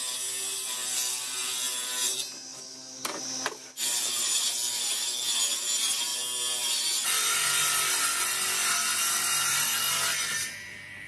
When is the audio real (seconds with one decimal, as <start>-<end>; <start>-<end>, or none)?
0.0-2.5; 3.2-11.1